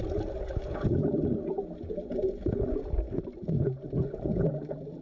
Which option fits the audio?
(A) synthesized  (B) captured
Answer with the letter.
B